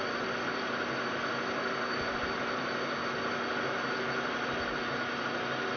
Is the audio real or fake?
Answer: real